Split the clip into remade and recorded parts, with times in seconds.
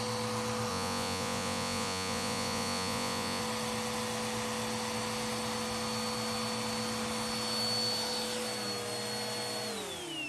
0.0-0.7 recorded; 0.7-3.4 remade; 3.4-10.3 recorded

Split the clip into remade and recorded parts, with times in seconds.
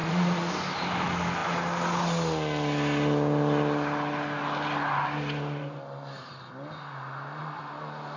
0.0-0.5 remade; 0.5-8.2 recorded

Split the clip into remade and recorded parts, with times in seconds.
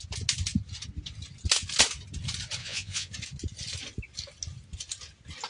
0.0-2.6 recorded; 2.6-3.1 remade; 3.1-5.5 recorded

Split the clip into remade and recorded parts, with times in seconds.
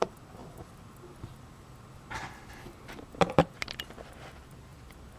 0.0-5.2 recorded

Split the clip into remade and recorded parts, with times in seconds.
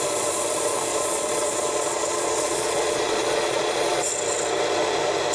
0.0-0.9 recorded; 0.9-4.1 remade; 4.1-5.3 recorded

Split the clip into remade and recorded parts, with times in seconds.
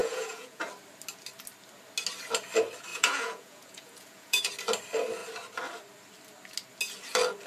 0.0-0.6 remade; 0.6-2.9 recorded; 2.9-4.5 remade; 4.5-7.5 recorded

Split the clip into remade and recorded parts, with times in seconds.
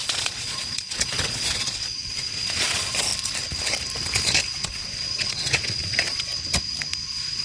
0.0-3.1 remade; 3.1-4.5 recorded; 4.5-6.3 remade; 6.3-7.0 recorded; 7.0-7.4 remade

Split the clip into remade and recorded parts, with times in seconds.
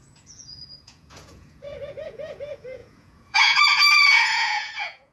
0.0-5.1 remade